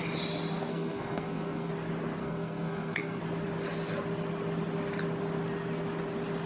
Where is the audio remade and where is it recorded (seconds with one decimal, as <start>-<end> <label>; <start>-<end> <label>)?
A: 0.0-0.7 recorded; 0.7-1.7 remade; 1.7-2.2 recorded; 2.2-3.2 remade; 3.2-6.5 recorded